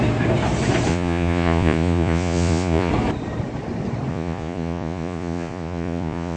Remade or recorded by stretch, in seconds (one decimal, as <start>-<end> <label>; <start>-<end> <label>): 0.0-0.9 recorded; 0.9-2.9 remade; 2.9-4.1 recorded; 4.1-6.4 remade